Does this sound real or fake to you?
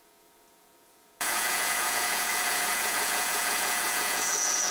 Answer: fake